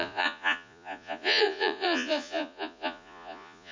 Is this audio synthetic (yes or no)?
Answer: yes